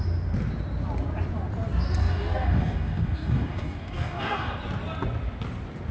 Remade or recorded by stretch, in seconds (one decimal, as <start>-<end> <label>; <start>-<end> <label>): 0.0-2.0 recorded; 2.0-4.5 remade; 4.5-5.9 recorded